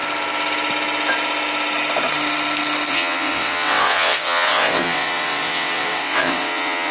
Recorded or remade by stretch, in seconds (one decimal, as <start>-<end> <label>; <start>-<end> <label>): 0.0-2.9 recorded; 2.9-6.9 remade